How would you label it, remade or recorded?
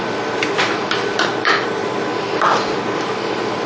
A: remade